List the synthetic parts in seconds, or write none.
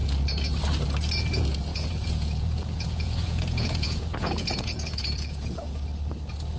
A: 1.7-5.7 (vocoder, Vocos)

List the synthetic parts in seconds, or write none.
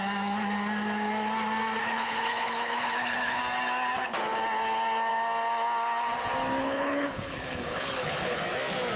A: 1.8-3.4 (codec, HILCodec); 6.6-8.4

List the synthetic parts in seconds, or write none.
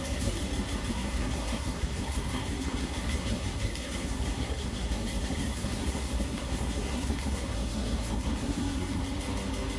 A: 0.0-0.4 (codec, SNAC); 0.9-9.0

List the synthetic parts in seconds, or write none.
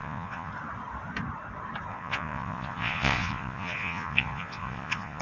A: 0.0-0.5 (vocoder, Vocos); 1.9-5.2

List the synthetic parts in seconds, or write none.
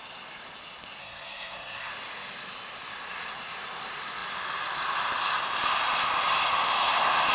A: 1.0-1.9 (codec, SNAC)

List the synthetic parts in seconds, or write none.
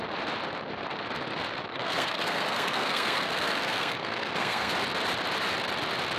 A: 1.7-4.7 (codec, SNAC)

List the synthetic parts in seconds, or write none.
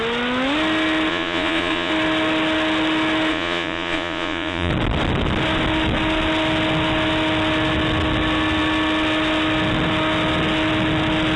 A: 1.1-1.9 (vocoder, Vocos); 3.3-4.7